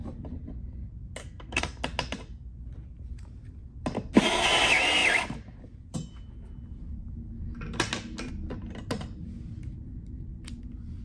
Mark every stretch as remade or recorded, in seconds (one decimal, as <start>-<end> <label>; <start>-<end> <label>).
0.0-1.2 recorded; 1.2-1.8 remade; 1.8-11.0 recorded

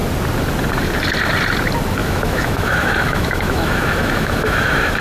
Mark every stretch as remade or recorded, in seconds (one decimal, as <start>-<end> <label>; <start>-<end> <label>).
0.0-2.0 recorded; 2.0-5.0 remade